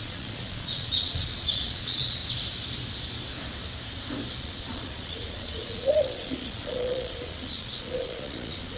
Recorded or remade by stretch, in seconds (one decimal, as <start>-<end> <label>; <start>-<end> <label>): 0.0-2.2 remade; 2.2-4.4 recorded; 4.4-8.8 remade

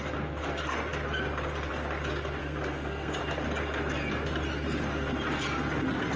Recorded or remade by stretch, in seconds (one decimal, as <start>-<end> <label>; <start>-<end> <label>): 0.0-2.4 recorded; 2.4-3.2 remade; 3.2-6.2 recorded

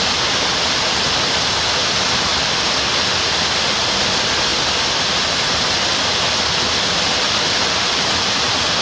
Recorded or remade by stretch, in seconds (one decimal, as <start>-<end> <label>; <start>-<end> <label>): 0.0-8.8 recorded

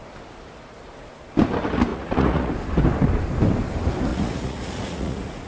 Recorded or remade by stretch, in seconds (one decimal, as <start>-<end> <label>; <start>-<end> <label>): 0.0-1.9 recorded; 1.9-2.5 remade; 2.5-4.1 recorded; 4.1-5.5 remade